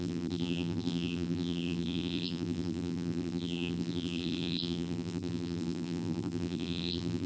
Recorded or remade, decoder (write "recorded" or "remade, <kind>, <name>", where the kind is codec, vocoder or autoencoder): remade, vocoder, BigVGAN v2